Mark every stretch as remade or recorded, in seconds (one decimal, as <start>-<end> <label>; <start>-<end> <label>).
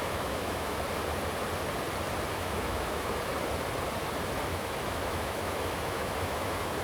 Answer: 0.0-0.8 remade; 0.8-2.3 recorded; 2.3-3.3 remade; 3.3-4.5 recorded; 4.5-6.8 remade